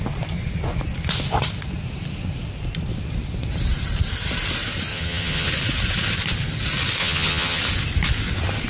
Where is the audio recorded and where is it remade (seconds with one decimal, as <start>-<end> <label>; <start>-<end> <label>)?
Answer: 0.0-4.9 recorded; 4.9-5.5 remade; 5.5-7.0 recorded; 7.0-7.6 remade; 7.6-8.7 recorded